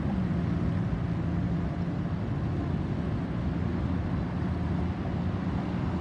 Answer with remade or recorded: recorded